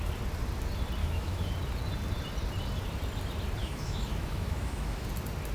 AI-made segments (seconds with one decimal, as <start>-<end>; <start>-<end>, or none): 1.0-1.5; 3.6-5.1

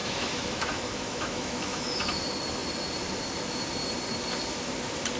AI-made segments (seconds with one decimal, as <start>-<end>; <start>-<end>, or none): 0.0-2.0